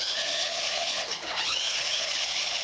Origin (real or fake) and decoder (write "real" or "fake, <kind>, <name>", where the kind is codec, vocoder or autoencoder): fake, codec, HILCodec